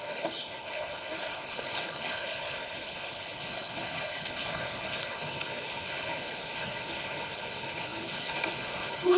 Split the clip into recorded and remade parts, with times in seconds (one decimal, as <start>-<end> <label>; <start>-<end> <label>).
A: 0.0-9.2 remade